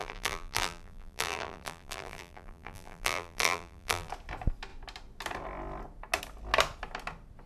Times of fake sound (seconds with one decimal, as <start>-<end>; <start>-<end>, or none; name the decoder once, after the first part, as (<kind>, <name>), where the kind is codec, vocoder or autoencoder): 0.0-4.1 (vocoder, BigVGAN v2)